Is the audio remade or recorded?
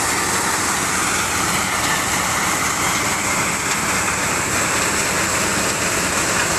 recorded